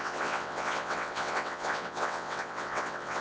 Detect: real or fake fake